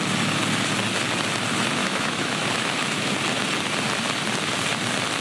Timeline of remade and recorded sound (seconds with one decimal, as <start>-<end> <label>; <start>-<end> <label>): 0.0-1.8 recorded; 1.8-3.1 remade; 3.1-5.2 recorded